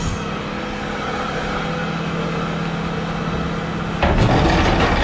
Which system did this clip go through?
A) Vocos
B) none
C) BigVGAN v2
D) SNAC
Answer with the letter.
B